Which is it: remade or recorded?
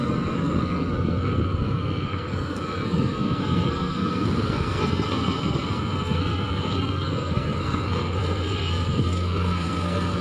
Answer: remade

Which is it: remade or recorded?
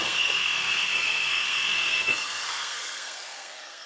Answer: remade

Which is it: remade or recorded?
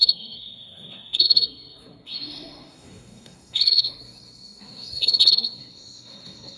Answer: remade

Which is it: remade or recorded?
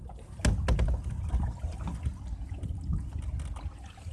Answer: recorded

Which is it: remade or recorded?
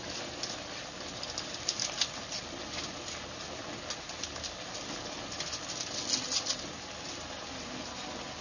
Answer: recorded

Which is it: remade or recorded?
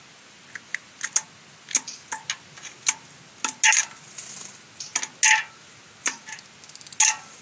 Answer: recorded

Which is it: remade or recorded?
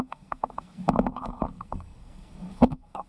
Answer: remade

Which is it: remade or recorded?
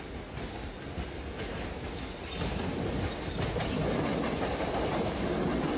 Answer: recorded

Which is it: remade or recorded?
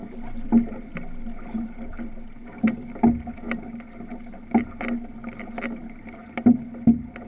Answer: recorded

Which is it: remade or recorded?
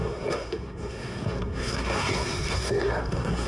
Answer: remade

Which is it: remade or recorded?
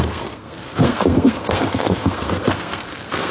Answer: remade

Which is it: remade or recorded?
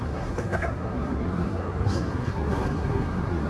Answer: remade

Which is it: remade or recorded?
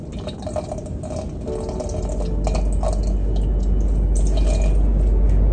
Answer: recorded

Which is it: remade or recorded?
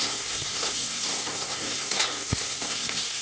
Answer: remade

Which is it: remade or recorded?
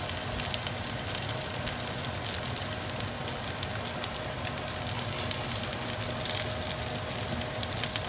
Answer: recorded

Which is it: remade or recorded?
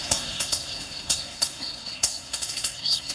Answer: remade